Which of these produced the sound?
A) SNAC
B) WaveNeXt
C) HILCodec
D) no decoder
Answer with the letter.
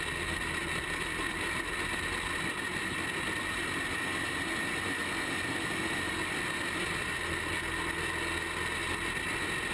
D